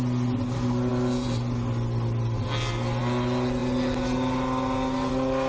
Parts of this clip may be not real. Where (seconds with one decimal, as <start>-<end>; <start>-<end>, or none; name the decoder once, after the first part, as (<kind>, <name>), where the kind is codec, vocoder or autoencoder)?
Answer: none